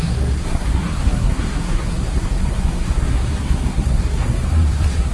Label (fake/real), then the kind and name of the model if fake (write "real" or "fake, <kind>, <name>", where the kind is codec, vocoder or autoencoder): fake, codec, SNAC